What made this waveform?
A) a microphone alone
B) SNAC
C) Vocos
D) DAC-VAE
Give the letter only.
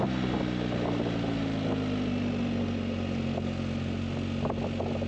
A